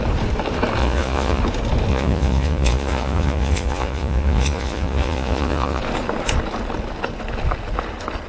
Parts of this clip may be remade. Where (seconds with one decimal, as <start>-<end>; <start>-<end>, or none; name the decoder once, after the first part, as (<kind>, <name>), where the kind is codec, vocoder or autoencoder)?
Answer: 0.8-1.4 (vocoder, Vocos); 1.9-5.8

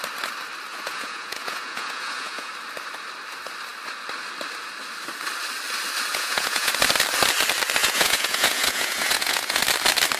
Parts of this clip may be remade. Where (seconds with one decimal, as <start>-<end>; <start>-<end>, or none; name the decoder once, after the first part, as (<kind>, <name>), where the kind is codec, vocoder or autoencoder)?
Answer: 0.7-2.5 (vocoder, Vocos); 6.1-6.7; 7.8-9.6

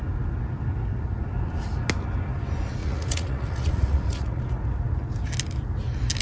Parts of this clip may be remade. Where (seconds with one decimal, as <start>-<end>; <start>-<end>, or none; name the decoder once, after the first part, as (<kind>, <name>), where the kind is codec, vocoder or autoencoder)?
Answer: 2.8-4.4 (vocoder, Vocos)

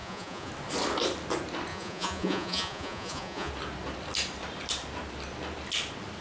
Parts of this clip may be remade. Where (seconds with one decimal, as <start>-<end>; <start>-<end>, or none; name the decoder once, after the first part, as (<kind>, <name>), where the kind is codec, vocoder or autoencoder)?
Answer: 0.0-0.5 (vocoder, Vocos); 1.7-3.5

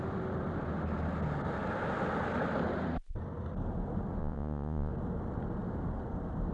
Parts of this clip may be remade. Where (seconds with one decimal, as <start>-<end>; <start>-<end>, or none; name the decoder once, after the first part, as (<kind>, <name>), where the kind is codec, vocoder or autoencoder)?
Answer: 4.2-4.9 (vocoder, Vocos)

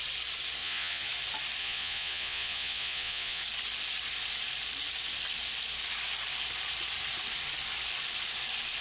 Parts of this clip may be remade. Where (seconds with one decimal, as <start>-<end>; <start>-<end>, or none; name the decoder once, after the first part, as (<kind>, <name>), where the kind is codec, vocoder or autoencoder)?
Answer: 0.6-1.1 (vocoder, Vocos); 1.6-3.4

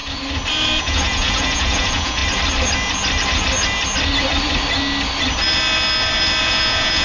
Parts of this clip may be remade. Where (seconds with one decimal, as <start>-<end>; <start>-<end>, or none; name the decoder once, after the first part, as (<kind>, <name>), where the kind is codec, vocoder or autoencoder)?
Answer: 0.8-2.2 (vocoder, Vocos); 6.4-7.0